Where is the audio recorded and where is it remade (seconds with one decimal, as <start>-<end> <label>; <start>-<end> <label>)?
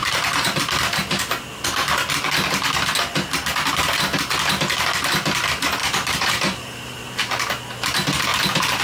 0.0-0.6 remade; 0.6-5.8 recorded; 5.8-7.2 remade; 7.2-8.8 recorded